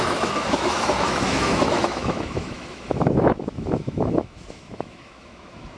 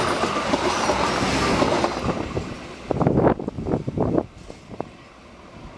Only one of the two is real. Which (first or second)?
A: second